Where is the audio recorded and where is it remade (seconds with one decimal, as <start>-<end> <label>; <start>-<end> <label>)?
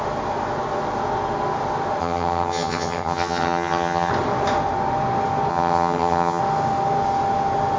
0.0-2.0 recorded; 2.0-4.1 remade; 4.1-5.5 recorded; 5.5-6.4 remade; 6.4-7.8 recorded